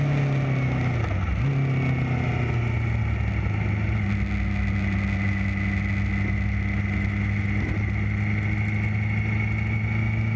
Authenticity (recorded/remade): recorded